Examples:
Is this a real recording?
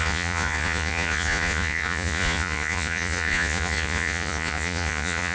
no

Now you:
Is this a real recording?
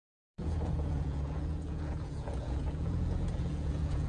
no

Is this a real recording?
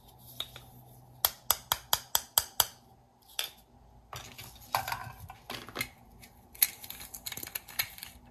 yes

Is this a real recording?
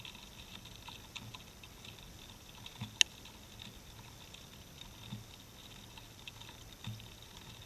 yes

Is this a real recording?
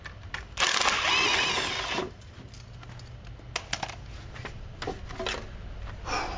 yes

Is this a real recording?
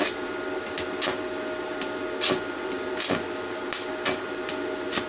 yes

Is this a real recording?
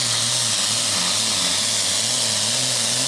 yes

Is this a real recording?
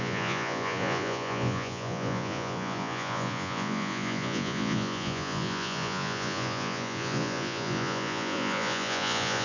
no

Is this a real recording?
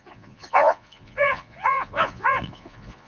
no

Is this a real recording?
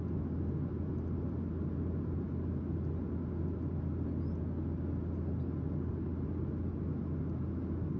yes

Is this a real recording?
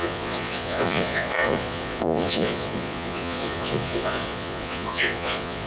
no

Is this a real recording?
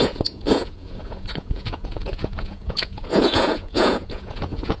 no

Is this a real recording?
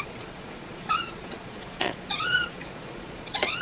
no